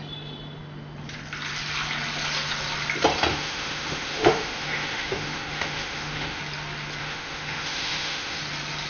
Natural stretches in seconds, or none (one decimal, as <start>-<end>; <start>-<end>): 0.0-3.3; 6.4-7.0; 8.4-8.9